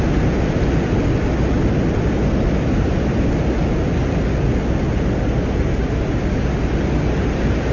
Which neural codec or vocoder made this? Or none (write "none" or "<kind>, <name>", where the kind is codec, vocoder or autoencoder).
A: none